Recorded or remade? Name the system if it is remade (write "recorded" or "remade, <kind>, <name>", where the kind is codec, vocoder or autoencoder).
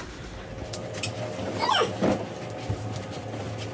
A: recorded